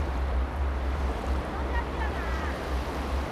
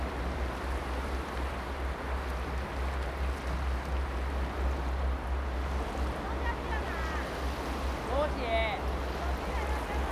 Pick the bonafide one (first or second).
second